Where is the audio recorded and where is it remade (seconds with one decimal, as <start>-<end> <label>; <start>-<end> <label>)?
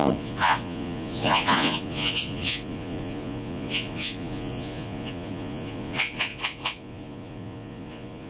0.0-8.3 remade